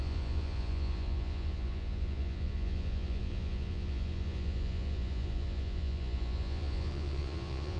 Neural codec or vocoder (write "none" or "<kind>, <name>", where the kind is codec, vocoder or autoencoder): vocoder, Vocos